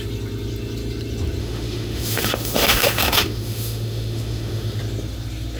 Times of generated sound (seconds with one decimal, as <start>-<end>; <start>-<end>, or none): 1.4-4.8